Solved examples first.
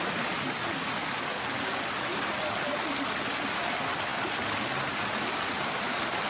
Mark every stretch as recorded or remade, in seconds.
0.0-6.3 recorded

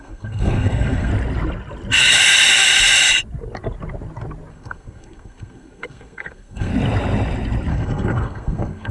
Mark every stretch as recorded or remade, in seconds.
0.0-1.1 remade; 1.1-4.5 recorded; 4.5-6.7 remade; 6.7-7.7 recorded; 7.7-8.9 remade

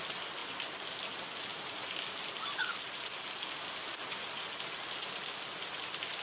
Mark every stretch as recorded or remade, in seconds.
0.0-6.2 recorded

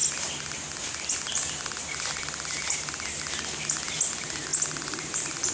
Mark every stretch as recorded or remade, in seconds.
0.0-5.5 recorded

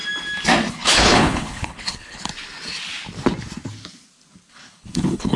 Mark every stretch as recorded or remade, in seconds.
0.0-0.7 recorded; 0.7-2.3 remade; 2.3-4.5 recorded; 4.5-5.4 remade